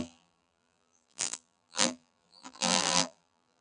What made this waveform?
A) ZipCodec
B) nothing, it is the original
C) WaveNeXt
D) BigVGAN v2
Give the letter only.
D